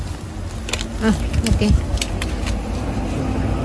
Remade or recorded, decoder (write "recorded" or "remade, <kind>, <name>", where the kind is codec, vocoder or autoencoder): recorded